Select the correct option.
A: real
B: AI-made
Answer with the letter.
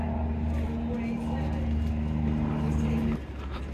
A